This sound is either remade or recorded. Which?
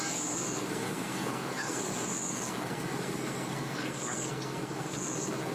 remade